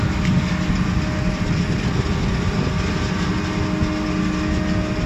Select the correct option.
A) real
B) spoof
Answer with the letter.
A